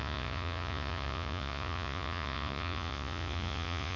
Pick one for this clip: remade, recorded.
remade